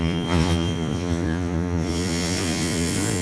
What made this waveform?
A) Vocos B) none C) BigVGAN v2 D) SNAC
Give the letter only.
A